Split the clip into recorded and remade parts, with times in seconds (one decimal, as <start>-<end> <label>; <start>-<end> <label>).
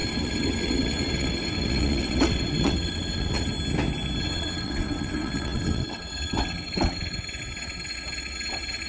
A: 0.0-3.5 remade; 3.5-4.2 recorded; 4.2-8.9 remade